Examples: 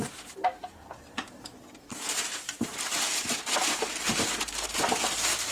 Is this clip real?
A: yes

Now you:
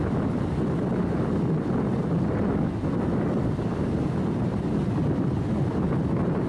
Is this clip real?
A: yes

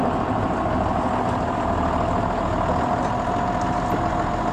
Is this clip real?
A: yes